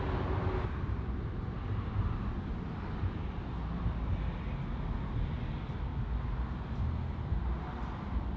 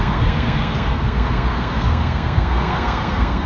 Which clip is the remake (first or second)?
second